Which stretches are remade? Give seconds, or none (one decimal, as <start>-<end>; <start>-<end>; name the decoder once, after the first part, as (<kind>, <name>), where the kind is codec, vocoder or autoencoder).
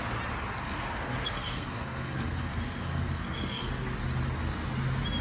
0.6-3.7 (codec, SNAC)